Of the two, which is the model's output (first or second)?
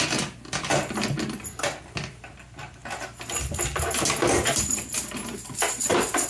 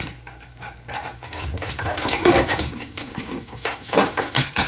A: second